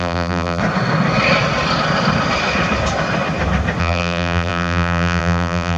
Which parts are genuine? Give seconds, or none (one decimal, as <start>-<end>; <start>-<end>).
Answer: 0.6-3.8